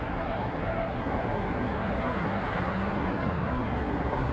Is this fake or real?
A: fake